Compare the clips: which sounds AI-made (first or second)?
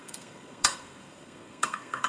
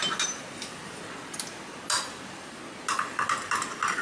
first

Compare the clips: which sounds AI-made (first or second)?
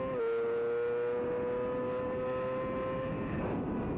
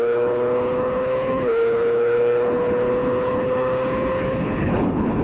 second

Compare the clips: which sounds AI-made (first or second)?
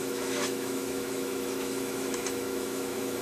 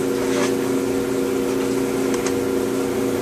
first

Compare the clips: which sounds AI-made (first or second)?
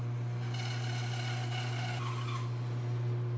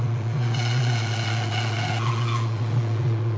second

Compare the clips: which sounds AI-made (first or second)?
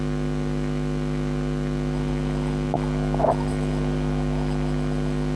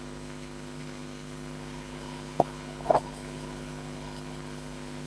second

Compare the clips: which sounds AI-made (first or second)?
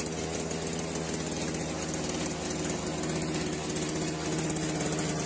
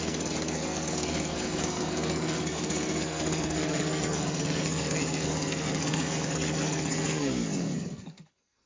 second